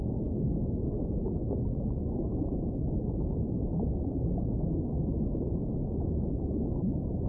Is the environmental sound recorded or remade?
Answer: recorded